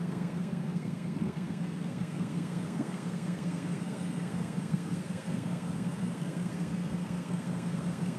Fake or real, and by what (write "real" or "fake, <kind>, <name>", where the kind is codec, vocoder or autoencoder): fake, codec, SNAC